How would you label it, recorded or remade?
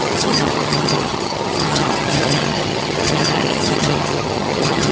remade